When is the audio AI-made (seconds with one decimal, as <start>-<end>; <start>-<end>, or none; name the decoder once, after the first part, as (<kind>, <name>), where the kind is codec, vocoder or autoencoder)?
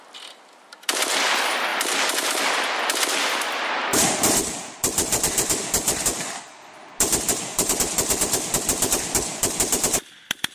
1.7-2.4 (vocoder, BigVGAN v2)